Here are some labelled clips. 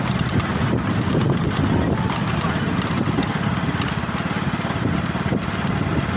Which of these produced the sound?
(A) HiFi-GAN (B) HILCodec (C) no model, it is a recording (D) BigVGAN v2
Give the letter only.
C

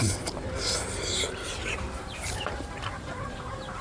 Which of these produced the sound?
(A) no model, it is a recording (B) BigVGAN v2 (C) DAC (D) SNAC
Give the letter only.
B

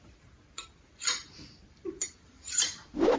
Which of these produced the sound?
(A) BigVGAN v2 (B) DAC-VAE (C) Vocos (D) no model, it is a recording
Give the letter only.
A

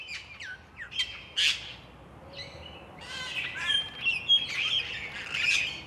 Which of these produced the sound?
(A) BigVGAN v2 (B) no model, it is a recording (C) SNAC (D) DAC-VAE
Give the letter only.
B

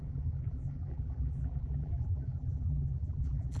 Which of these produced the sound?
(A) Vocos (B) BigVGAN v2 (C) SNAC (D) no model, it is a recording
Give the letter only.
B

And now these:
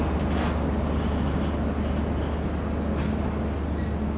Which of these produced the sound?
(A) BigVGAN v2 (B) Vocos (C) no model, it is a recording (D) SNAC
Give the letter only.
C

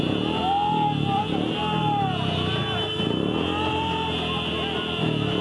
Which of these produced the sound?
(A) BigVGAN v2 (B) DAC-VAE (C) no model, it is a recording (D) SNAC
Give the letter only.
C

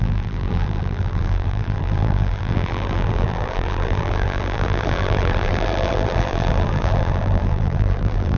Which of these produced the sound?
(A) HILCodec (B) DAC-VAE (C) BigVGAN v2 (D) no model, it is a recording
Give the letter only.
C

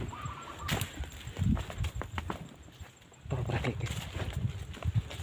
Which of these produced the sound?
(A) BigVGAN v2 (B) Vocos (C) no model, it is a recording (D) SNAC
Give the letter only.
C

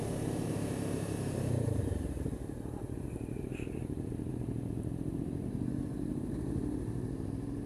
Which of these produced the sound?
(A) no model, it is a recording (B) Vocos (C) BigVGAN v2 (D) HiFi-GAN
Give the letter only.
C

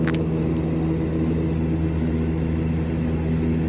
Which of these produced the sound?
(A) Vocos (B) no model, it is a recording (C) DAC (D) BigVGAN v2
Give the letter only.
B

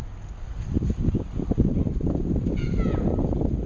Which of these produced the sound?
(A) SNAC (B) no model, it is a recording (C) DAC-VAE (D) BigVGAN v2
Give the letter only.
B